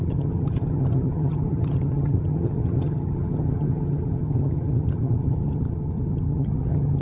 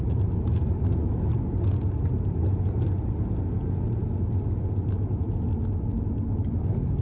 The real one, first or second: second